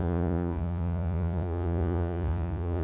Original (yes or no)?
no